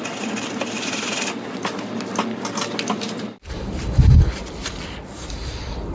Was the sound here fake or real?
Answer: real